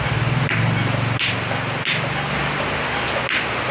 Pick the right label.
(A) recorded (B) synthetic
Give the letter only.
A